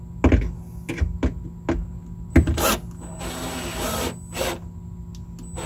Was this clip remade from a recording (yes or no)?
no